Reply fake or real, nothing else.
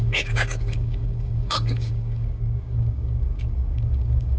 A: fake